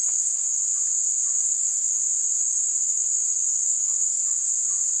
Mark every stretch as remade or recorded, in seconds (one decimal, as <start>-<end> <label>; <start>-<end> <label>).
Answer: 0.0-0.6 remade; 0.6-1.4 recorded; 1.4-2.0 remade; 2.0-2.4 recorded; 2.4-4.5 remade; 4.5-5.0 recorded